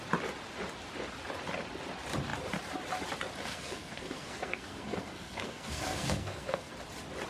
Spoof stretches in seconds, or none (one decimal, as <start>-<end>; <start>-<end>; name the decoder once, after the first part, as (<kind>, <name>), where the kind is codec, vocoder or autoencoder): 3.5-6.7 (codec, SNAC)